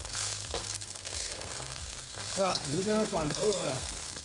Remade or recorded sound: remade